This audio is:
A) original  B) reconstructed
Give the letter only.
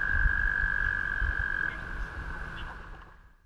A